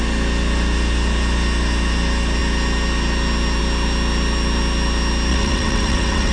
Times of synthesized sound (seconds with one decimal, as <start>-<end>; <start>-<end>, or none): 5.3-6.3